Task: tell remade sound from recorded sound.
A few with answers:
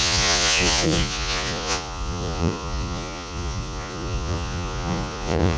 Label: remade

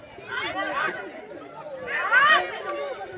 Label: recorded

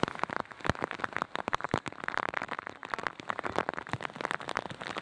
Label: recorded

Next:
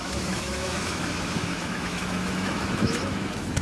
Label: remade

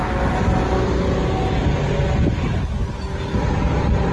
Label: recorded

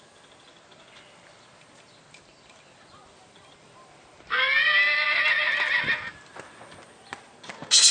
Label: recorded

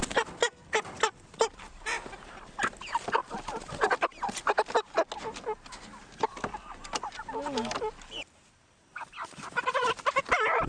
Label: recorded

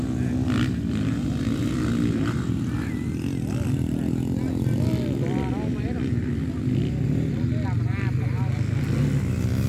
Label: recorded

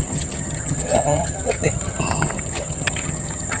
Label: remade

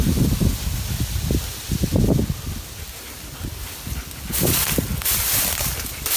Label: recorded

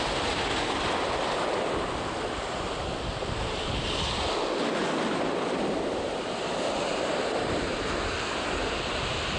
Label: recorded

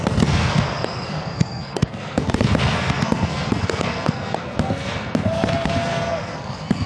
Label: remade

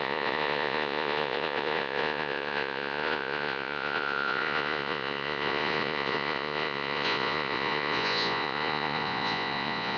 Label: remade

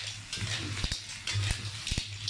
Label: recorded